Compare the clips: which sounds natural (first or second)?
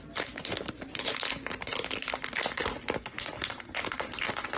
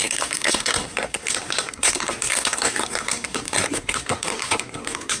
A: first